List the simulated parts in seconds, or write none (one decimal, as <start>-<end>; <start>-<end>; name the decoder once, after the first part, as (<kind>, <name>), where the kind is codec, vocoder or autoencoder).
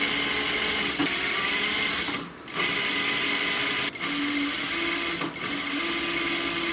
none